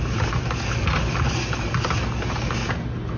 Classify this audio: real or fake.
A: real